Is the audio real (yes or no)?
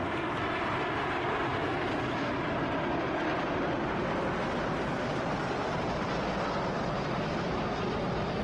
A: yes